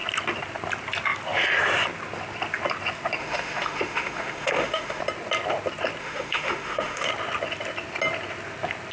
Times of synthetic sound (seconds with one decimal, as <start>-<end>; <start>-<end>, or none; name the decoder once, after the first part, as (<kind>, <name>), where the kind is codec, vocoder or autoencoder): 3.2-5.0 (autoencoder, DAC-VAE); 6.0-7.1